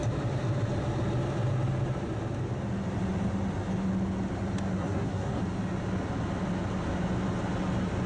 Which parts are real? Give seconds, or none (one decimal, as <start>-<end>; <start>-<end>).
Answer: 0.0-4.8; 5.4-8.1